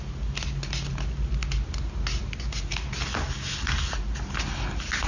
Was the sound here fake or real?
real